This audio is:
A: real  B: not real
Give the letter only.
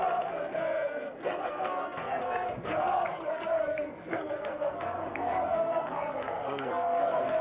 B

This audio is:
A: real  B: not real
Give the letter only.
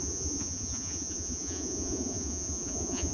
B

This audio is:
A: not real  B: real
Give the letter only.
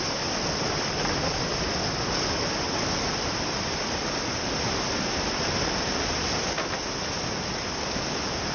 B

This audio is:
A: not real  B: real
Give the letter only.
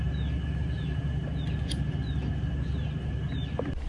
B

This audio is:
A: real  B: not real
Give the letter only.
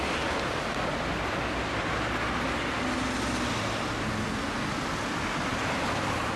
A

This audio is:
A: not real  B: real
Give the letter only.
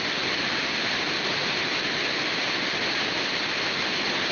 B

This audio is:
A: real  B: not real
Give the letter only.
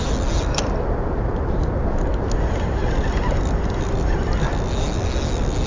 A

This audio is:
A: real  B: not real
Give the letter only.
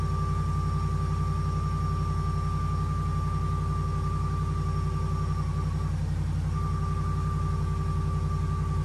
A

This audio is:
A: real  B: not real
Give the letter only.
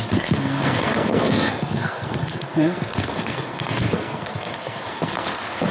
B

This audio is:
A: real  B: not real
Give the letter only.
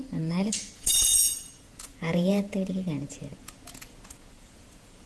B